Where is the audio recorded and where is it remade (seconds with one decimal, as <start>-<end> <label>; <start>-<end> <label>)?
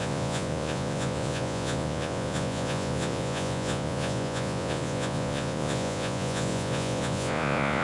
0.0-7.8 remade